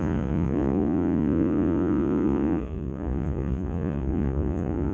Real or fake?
fake